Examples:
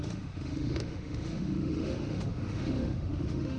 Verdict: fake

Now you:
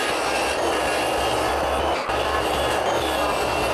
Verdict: real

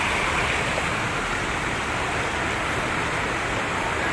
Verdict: real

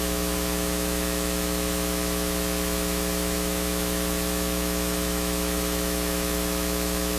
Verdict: fake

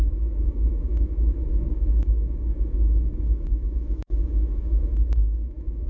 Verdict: fake